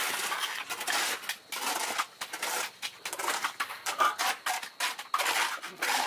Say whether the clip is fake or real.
real